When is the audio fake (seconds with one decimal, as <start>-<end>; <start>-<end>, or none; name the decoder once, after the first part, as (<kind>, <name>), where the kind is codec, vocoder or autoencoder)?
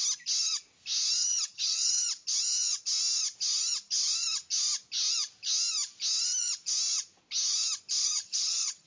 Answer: 1.2-2.0 (vocoder, HiFi-GAN); 8.0-8.9